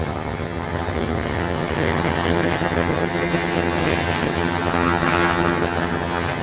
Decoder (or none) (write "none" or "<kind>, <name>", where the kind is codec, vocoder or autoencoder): vocoder, HiFi-GAN